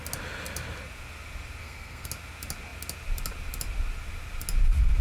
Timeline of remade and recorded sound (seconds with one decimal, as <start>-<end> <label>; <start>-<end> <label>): 0.0-1.6 recorded; 1.6-2.1 remade; 2.1-5.0 recorded